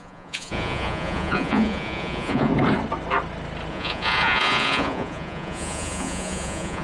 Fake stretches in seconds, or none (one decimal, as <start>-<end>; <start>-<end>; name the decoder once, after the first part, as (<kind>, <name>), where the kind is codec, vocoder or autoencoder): 0.0-2.5 (vocoder, Vocos); 3.7-6.8